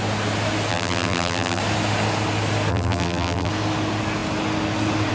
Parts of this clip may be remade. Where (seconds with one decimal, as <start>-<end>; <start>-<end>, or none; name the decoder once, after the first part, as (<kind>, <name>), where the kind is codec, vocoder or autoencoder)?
0.7-1.6 (vocoder, BigVGAN v2); 2.7-3.5